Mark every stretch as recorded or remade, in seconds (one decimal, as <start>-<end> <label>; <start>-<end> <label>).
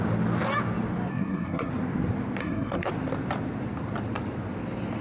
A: 0.0-1.1 recorded; 1.1-1.7 remade; 1.7-2.4 recorded; 2.4-2.9 remade; 2.9-5.0 recorded